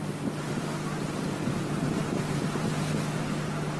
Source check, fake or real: real